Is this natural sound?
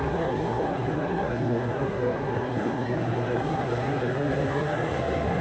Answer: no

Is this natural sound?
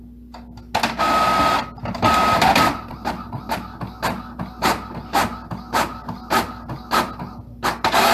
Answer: yes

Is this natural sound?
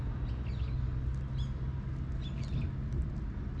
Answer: yes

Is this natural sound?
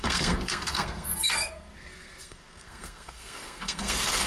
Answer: no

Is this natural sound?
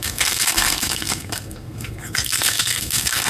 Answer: no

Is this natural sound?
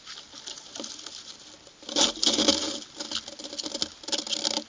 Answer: yes